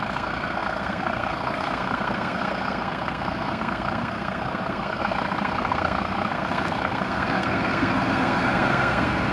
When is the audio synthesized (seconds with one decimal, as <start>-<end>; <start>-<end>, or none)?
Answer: 0.0-9.3